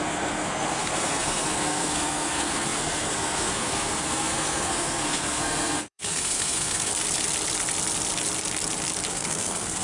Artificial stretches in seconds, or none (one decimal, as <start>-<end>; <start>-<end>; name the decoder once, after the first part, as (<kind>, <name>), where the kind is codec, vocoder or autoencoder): 0.0-6.9 (codec, SNAC); 9.1-9.8